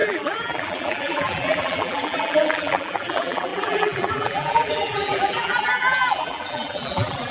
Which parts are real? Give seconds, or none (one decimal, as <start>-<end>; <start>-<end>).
none